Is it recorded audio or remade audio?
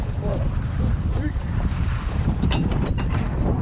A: remade